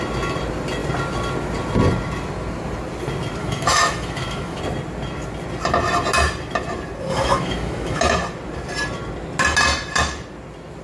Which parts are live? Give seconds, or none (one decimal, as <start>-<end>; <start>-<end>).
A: 0.0-3.4; 4.6-7.1; 8.0-10.8